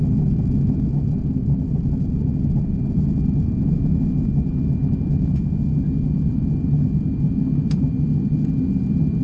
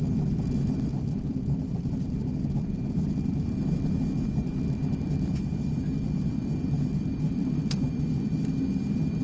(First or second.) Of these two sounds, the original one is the first